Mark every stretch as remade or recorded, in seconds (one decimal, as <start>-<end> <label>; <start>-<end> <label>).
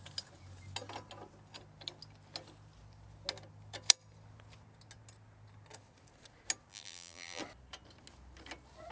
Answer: 0.0-6.7 recorded; 6.7-7.4 remade; 7.4-8.9 recorded